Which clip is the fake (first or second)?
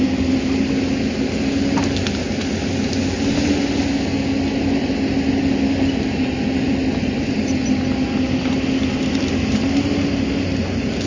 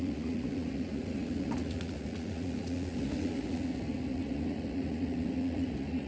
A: second